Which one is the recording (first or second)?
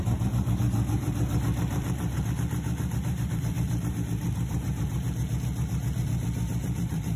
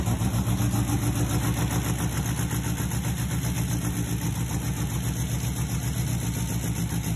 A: second